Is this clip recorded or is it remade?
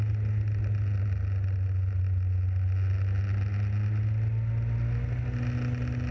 recorded